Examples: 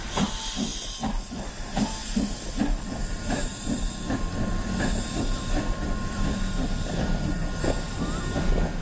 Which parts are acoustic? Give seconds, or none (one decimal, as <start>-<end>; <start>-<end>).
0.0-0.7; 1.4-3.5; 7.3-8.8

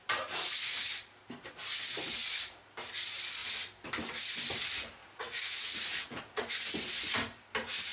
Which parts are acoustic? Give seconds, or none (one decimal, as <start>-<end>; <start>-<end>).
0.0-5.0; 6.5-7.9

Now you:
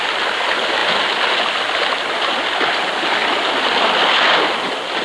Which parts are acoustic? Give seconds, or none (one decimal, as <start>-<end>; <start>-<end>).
0.0-3.2; 3.7-5.0

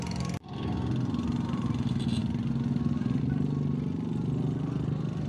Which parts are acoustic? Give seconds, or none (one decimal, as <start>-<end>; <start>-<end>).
0.0-5.3